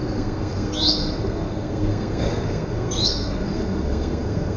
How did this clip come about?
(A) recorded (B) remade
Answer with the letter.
B